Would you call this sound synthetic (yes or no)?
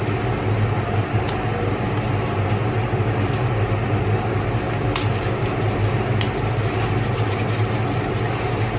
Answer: no